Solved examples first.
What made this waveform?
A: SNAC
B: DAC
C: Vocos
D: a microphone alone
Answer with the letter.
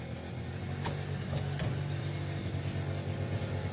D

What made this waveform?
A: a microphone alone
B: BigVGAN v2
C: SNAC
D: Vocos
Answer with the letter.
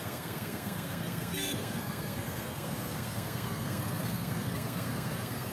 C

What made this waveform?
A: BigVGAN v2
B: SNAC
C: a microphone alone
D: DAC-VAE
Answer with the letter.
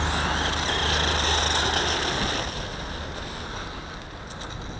C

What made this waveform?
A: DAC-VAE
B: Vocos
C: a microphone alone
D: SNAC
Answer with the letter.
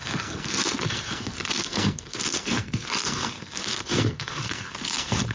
D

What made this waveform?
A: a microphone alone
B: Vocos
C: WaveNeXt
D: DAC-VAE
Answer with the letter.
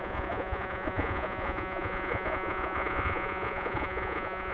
B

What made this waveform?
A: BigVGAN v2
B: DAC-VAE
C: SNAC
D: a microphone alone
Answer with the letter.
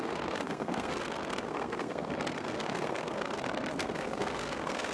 C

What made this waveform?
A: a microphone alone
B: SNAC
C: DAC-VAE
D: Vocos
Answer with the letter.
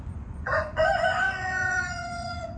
D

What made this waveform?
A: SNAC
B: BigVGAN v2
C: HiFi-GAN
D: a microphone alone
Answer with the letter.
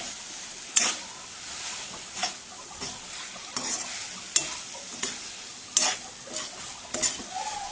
D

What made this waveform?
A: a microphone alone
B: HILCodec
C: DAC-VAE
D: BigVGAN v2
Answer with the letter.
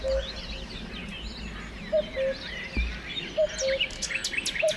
A